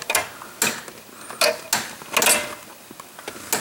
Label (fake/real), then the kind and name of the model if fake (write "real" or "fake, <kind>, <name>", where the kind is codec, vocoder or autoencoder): real